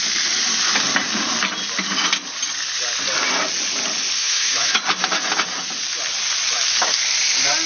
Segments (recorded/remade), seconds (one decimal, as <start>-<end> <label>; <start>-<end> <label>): 0.0-4.2 recorded; 4.2-4.8 remade; 4.8-7.7 recorded